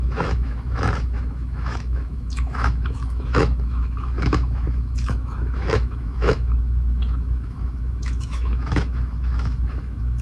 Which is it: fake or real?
fake